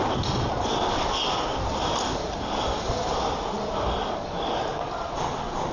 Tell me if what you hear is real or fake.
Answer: real